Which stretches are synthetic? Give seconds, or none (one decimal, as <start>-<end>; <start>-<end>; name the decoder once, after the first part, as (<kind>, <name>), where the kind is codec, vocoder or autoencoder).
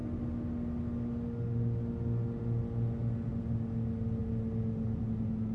none